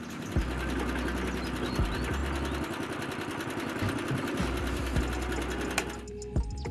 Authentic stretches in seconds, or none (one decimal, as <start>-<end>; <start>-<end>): 0.0-6.7